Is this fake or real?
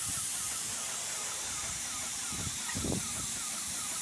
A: fake